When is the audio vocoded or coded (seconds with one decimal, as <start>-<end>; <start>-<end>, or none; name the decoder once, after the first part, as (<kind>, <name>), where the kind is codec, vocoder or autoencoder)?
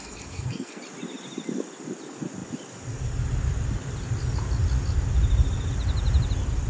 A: 0.0-0.8 (codec, SNAC)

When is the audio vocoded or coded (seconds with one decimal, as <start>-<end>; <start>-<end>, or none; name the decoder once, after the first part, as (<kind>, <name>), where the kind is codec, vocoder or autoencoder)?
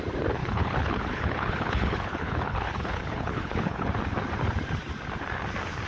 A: 0.4-3.9 (codec, HILCodec)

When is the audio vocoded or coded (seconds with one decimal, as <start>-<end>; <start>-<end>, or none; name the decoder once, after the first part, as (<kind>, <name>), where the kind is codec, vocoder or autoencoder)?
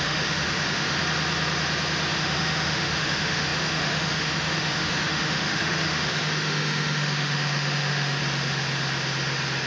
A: 0.0-1.0 (autoencoder, DAC-VAE); 2.1-8.2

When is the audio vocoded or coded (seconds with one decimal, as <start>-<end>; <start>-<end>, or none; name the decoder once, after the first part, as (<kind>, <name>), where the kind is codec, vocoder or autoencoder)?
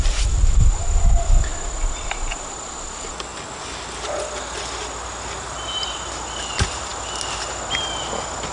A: none